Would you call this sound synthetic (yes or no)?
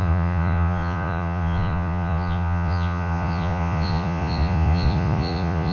yes